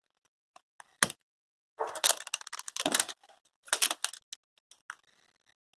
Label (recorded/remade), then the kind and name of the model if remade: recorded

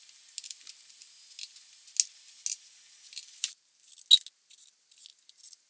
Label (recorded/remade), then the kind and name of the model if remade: recorded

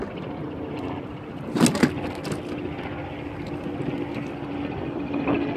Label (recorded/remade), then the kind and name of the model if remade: recorded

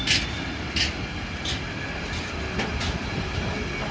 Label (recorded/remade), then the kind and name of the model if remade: recorded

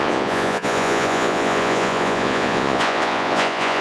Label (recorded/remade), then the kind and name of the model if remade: remade, vocoder, Vocos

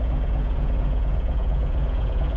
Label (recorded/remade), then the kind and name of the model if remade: remade, vocoder, Vocos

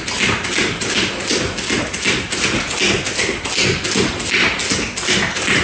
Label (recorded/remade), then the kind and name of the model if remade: recorded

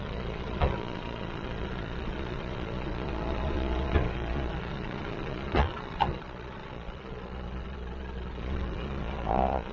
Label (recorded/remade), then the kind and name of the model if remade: remade, vocoder, Vocos